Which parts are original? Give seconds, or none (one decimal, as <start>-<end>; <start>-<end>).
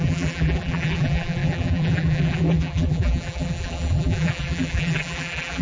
none